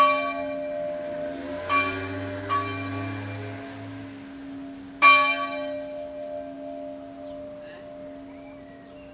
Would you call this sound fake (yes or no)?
no